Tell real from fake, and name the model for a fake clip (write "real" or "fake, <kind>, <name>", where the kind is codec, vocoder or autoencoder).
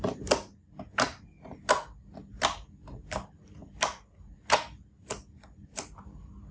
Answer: real